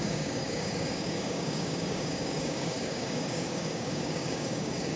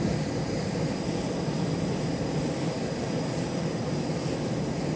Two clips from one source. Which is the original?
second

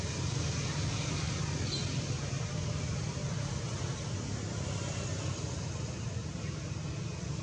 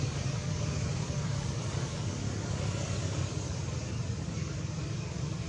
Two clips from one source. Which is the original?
first